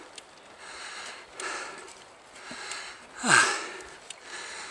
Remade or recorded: recorded